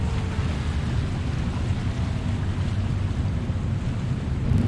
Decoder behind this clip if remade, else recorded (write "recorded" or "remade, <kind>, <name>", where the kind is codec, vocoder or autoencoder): recorded